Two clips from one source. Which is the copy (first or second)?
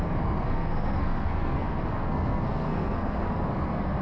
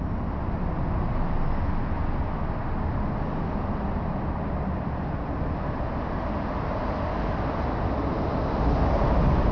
first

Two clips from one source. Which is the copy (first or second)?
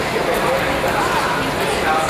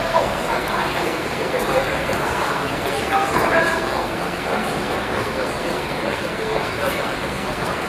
second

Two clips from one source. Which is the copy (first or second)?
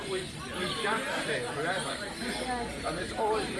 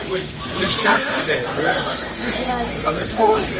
second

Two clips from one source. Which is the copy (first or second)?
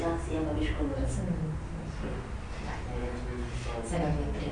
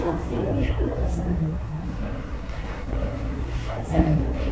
second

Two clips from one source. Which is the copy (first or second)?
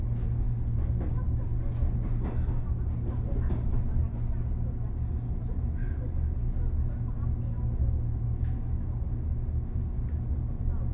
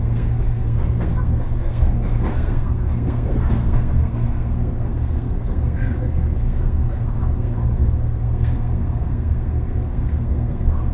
second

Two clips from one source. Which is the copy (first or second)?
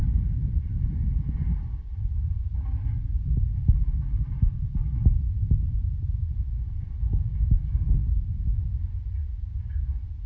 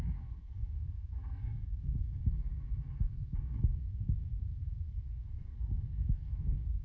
second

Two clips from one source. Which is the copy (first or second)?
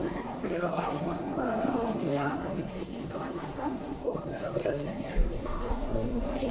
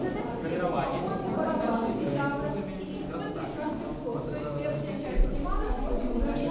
first